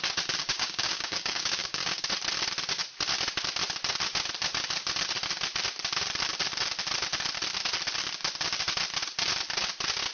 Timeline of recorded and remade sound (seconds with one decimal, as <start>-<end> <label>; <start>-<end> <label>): 0.0-0.5 recorded; 0.5-2.1 remade; 2.1-10.1 recorded